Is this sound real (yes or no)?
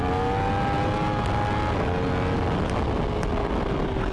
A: yes